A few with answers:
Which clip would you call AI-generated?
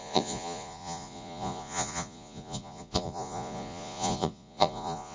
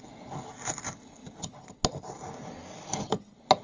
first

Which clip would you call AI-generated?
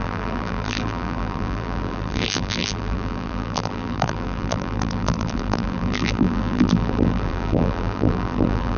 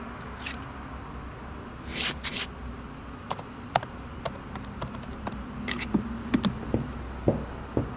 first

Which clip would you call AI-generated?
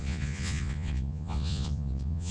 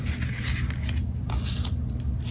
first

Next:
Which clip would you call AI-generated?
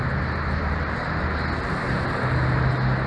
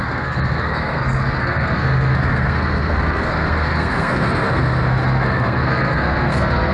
second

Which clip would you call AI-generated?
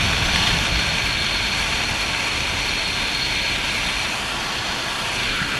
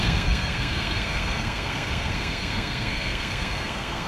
second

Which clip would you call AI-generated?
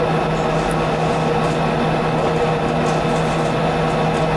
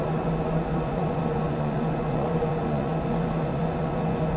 second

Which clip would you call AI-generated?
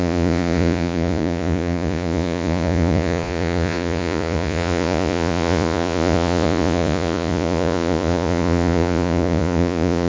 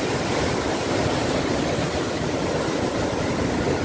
first